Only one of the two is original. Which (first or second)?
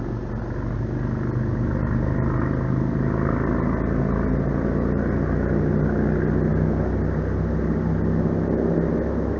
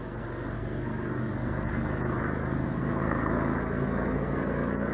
first